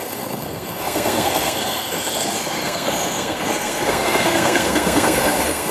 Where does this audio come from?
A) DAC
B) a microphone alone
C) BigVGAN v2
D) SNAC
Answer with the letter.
D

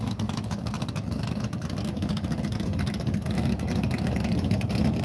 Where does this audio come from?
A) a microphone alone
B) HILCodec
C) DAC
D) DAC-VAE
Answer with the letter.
C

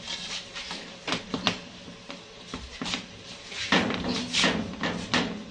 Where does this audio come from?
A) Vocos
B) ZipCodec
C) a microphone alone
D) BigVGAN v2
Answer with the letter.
C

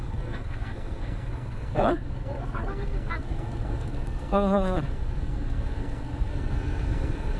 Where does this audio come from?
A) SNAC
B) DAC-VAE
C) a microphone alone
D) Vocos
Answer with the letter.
A